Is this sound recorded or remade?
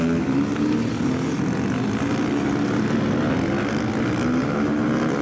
recorded